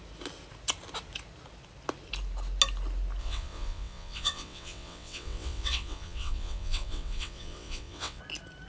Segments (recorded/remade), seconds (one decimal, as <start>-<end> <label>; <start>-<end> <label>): 0.0-3.2 recorded; 3.2-8.2 remade; 8.2-8.7 recorded